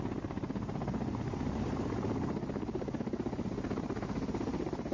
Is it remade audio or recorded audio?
recorded